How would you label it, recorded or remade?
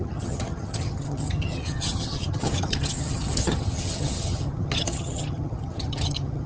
remade